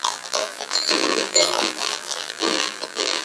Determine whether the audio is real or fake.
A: fake